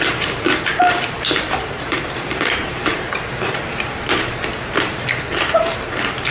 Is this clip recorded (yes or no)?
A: no